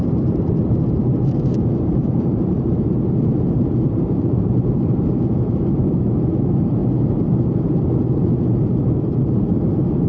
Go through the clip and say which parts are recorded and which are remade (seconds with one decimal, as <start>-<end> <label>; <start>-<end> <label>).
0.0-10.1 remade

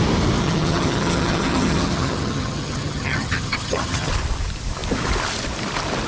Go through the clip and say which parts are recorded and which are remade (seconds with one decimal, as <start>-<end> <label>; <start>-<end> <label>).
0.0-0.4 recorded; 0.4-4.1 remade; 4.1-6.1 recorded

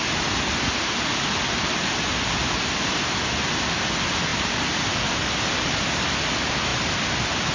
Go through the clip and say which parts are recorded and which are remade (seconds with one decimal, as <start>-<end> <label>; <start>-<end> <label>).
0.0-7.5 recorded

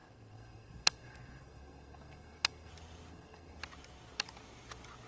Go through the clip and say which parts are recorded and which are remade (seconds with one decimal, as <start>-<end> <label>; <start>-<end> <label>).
0.0-2.7 remade; 2.7-3.1 recorded; 3.1-3.6 remade; 3.6-5.1 recorded

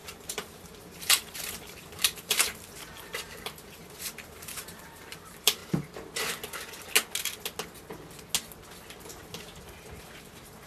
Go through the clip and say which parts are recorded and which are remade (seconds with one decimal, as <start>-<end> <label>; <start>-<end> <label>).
0.0-5.6 remade; 5.6-10.0 recorded; 10.0-10.7 remade

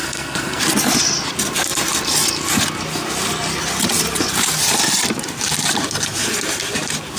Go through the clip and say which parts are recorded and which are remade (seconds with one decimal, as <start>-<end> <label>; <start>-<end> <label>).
0.0-0.6 remade; 0.6-7.2 recorded